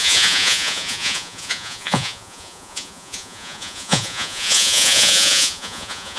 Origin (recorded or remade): remade